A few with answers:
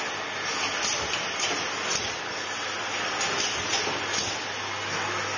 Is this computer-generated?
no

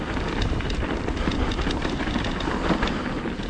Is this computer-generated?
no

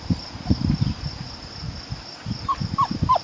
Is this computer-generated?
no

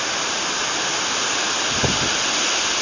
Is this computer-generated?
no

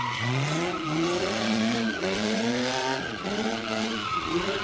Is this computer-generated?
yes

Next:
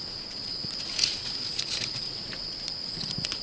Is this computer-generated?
yes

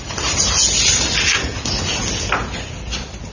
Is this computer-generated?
no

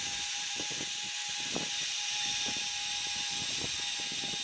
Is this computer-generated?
no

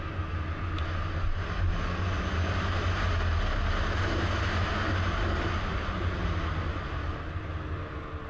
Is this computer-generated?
no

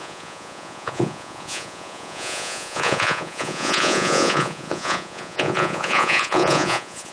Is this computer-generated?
yes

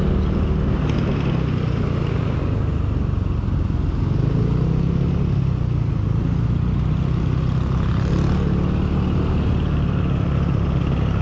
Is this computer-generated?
no